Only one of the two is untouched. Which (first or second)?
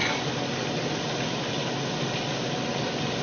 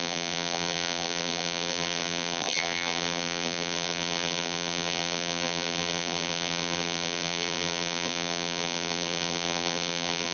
first